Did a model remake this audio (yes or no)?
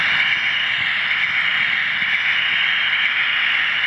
no